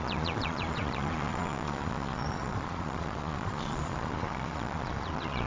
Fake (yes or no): yes